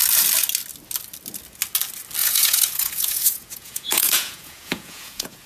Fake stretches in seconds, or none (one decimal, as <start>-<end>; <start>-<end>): 2.2-5.5